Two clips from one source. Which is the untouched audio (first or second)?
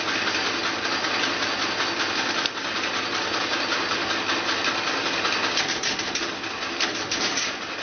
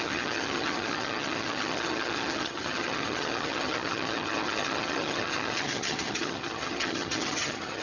first